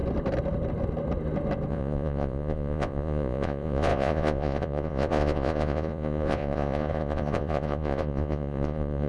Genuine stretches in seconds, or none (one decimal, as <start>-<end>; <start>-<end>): 0.0-1.7